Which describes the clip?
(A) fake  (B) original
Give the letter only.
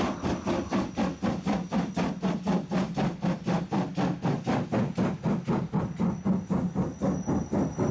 B